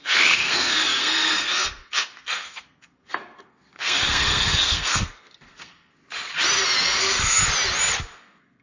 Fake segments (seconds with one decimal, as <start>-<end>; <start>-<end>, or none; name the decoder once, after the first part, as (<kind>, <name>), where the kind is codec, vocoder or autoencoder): 0.0-6.0 (codec, SNAC); 7.0-7.4; 8.2-8.6